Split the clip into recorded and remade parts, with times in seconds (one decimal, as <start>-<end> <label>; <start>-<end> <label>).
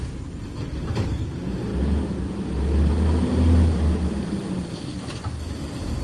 0.0-6.0 recorded